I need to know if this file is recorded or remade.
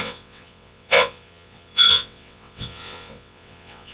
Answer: remade